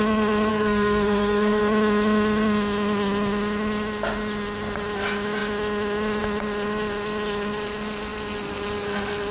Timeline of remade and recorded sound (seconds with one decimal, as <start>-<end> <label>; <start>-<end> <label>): 0.0-0.5 recorded; 0.5-1.6 remade; 1.6-9.3 recorded